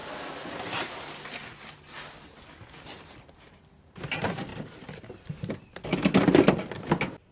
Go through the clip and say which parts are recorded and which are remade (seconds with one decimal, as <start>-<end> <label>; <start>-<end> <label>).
0.0-7.3 recorded